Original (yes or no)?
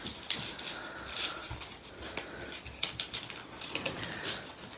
yes